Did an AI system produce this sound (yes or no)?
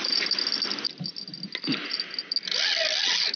no